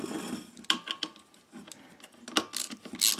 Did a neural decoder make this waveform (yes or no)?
no